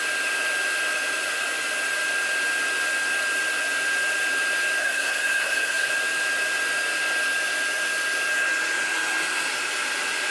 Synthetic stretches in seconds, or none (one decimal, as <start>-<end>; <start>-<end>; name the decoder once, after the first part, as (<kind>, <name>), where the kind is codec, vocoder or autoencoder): 4.8-5.9 (codec, SNAC)